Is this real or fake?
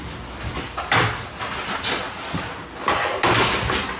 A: real